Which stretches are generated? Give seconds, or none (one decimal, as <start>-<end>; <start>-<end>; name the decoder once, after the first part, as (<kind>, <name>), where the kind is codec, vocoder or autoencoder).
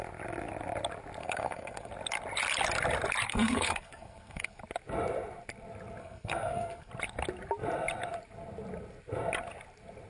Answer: 1.2-1.9 (codec, SNAC); 3.3-4.6; 6.0-6.9